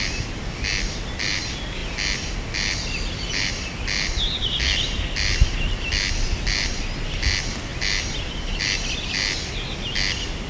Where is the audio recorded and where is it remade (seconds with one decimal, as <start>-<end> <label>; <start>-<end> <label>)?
0.0-10.5 recorded